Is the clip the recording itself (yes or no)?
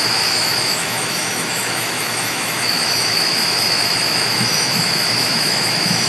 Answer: no